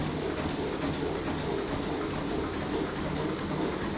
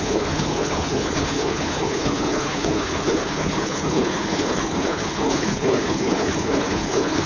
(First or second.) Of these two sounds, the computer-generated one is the second